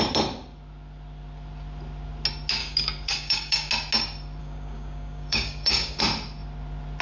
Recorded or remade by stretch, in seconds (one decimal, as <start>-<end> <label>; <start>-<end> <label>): 0.0-2.6 recorded; 2.6-3.7 remade; 3.7-4.4 recorded; 4.4-6.0 remade; 6.0-7.0 recorded